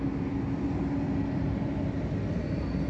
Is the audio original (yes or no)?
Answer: yes